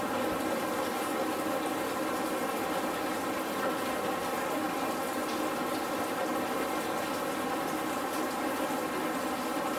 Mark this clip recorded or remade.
recorded